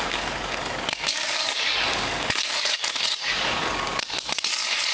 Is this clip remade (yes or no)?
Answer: yes